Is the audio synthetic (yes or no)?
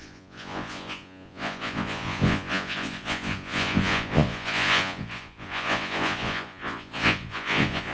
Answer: yes